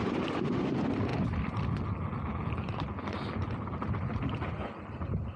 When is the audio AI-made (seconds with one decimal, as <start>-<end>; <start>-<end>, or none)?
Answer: none